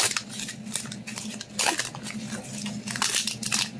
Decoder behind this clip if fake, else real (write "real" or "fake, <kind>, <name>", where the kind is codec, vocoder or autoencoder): real